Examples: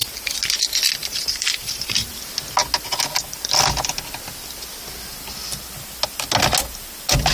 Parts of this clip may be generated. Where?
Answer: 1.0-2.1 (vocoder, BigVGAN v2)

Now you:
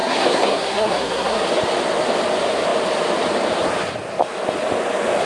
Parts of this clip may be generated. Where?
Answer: 0.0-1.5 (codec, SNAC)

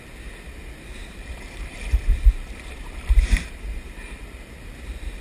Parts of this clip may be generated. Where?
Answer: 1.0-4.1 (vocoder, BigVGAN v2)

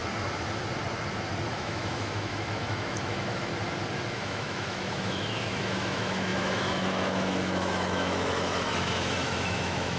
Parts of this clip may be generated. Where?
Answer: 1.5-3.5 (autoencoder, DAC-VAE); 4.1-10.0

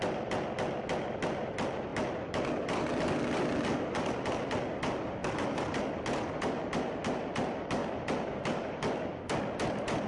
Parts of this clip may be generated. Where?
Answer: none

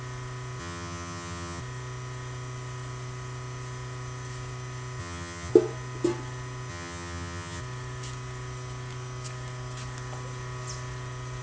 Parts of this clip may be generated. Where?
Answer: 0.6-1.6 (vocoder, HiFi-GAN); 5.0-5.5; 6.7-7.6